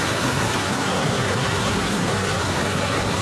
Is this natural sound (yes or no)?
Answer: no